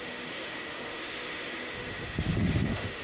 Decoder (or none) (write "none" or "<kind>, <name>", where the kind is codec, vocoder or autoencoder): autoencoder, DAC-VAE